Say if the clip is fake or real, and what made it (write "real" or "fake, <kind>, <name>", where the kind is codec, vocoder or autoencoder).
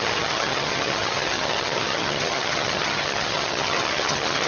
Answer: fake, vocoder, HiFi-GAN